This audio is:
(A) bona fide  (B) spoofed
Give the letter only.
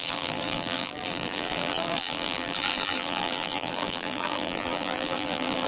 B